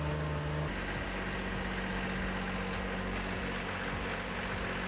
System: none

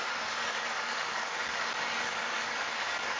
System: codec, DAC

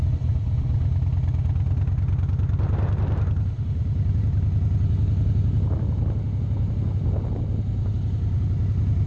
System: none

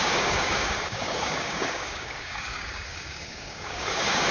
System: codec, DAC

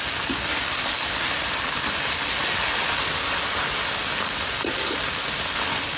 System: none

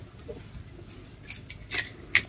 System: none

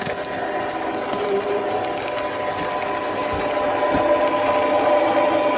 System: none